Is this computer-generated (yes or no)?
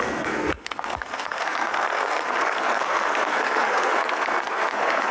yes